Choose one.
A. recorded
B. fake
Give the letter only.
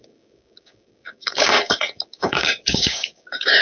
B